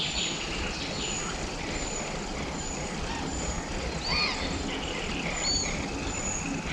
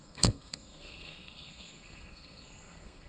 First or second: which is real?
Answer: first